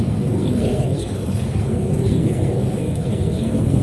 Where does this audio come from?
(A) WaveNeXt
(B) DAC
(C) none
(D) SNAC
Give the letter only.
D